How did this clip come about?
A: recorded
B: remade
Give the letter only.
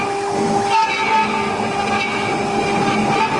A